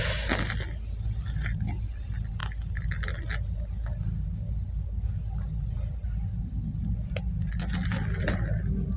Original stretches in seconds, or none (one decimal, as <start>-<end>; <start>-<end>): 0.0-9.0